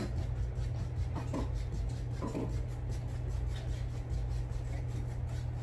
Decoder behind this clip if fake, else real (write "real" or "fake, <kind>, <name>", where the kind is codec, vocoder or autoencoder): real